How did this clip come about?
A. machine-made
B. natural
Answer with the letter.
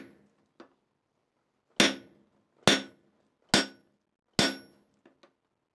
B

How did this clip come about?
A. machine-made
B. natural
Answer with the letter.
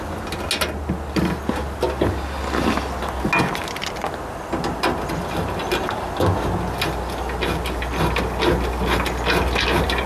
B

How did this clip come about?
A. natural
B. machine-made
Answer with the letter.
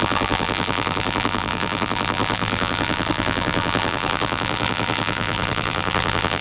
B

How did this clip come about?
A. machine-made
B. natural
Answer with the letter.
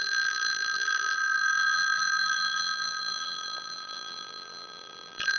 A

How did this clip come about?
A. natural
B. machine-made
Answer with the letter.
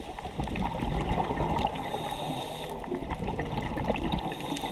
A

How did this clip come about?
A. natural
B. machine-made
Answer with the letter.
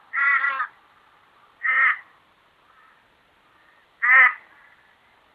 A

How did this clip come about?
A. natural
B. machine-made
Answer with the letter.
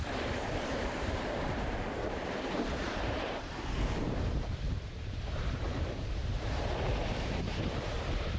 B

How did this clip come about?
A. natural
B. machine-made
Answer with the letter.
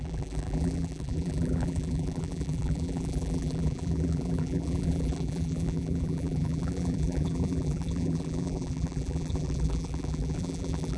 B